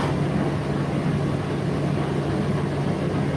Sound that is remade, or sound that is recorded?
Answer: recorded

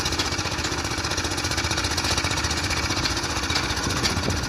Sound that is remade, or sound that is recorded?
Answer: remade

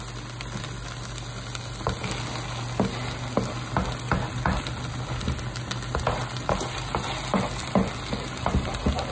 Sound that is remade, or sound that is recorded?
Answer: recorded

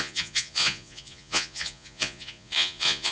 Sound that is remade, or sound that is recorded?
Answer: remade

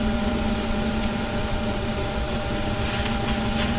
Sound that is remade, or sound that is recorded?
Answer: remade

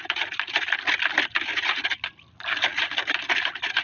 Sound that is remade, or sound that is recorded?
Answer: recorded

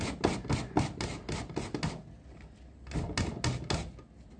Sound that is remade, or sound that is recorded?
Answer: recorded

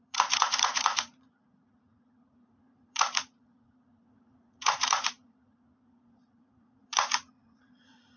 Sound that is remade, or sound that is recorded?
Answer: remade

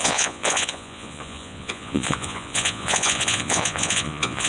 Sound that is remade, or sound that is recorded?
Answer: remade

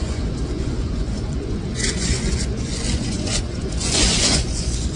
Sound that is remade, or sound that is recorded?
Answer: remade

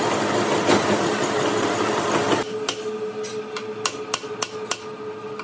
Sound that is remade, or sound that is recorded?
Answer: recorded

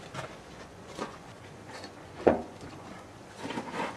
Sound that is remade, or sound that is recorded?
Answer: remade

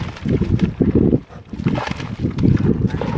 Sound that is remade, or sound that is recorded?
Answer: recorded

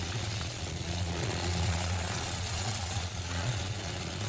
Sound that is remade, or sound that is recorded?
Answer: remade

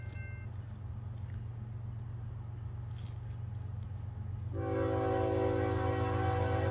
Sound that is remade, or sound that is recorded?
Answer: recorded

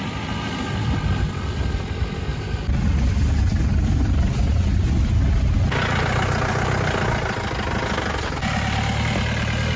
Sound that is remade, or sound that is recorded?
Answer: recorded